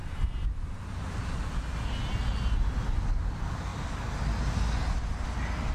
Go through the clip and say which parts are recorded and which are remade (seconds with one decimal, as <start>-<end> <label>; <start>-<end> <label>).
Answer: 0.0-1.2 remade; 1.2-5.7 recorded